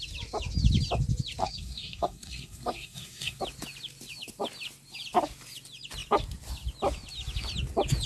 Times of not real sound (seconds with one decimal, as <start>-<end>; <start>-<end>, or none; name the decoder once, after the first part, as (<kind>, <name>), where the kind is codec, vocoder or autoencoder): 1.4-3.4 (codec, SNAC)